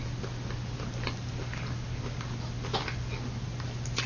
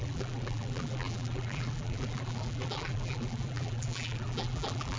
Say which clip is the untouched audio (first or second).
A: first